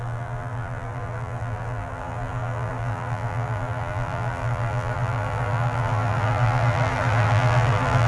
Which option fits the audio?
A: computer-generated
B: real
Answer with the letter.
A